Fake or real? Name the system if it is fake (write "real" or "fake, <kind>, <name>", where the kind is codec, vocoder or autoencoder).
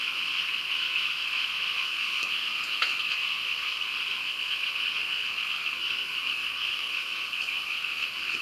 fake, codec, SNAC